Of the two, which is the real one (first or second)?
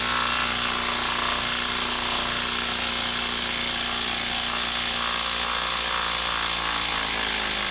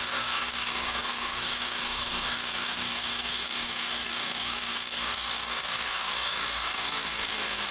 first